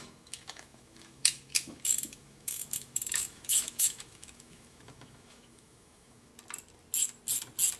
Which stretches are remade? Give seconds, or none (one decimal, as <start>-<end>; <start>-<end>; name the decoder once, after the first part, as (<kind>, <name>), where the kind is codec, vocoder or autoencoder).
0.0-6.3 (autoencoder, DAC-VAE)

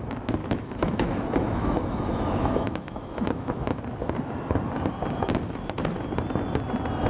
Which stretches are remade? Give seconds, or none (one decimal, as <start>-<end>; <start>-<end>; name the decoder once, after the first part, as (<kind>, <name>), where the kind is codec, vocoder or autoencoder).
0.4-3.8 (autoencoder, DAC-VAE)

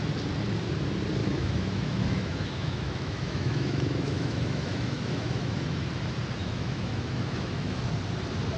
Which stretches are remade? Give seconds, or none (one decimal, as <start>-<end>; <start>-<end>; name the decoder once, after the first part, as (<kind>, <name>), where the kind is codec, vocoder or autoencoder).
1.2-5.9 (autoencoder, DAC-VAE); 6.4-7.9

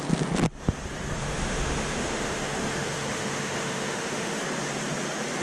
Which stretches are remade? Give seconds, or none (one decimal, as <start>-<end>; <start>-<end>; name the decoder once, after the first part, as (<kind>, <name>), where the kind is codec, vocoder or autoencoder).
1.2-4.4 (autoencoder, DAC-VAE)

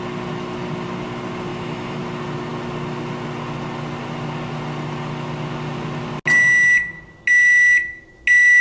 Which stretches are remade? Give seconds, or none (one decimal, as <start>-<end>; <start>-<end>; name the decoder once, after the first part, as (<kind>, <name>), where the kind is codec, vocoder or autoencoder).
1.5-2.0 (autoencoder, DAC-VAE)

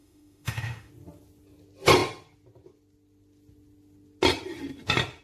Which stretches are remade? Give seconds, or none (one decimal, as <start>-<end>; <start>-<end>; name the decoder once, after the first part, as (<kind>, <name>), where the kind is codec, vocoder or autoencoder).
0.0-0.9 (autoencoder, DAC-VAE)